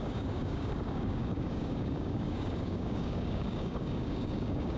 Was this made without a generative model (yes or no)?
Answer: no